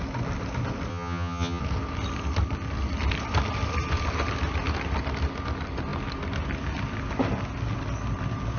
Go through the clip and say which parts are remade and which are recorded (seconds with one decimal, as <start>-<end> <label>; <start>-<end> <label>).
0.0-0.9 recorded; 0.9-1.6 remade; 1.6-8.6 recorded

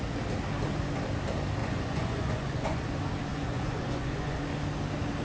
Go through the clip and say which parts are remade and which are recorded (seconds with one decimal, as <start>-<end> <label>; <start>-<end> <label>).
0.0-1.6 recorded; 1.6-2.8 remade; 2.8-3.3 recorded; 3.3-4.4 remade; 4.4-5.2 recorded